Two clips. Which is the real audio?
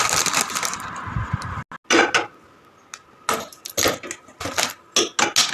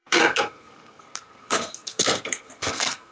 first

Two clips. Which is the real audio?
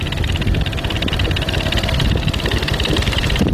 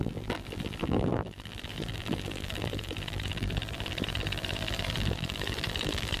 first